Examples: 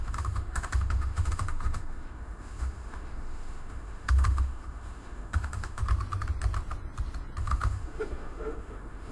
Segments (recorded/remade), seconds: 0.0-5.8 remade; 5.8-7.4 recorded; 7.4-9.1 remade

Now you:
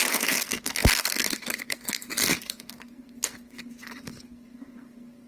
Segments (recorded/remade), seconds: 0.0-5.3 remade